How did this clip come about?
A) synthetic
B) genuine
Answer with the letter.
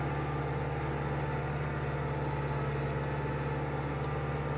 B